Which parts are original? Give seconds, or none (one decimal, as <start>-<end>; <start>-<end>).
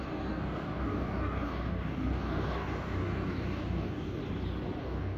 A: 4.2-4.8